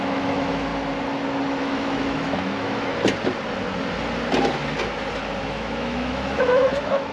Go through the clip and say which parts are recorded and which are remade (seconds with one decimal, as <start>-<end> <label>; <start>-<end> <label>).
0.0-0.7 remade; 0.7-1.6 recorded; 1.6-2.9 remade; 2.9-5.4 recorded; 5.4-7.1 remade